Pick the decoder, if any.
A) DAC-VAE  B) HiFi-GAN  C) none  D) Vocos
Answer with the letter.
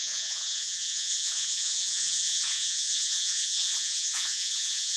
D